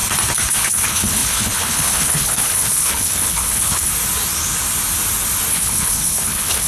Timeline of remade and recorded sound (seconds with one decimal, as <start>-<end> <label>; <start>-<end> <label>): 0.0-0.5 recorded; 0.5-3.9 remade; 3.9-5.5 recorded; 5.5-6.7 remade